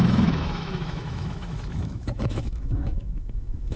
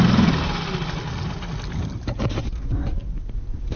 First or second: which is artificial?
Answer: first